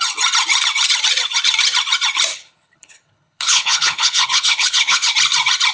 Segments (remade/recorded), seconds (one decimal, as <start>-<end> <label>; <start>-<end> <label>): 0.0-2.3 recorded; 2.3-5.1 remade; 5.1-5.7 recorded